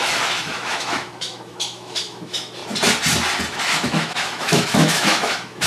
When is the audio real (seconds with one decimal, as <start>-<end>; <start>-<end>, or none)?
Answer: 2.6-3.5